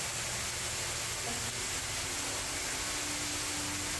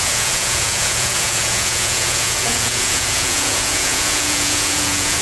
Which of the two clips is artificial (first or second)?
second